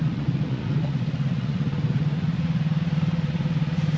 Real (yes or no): no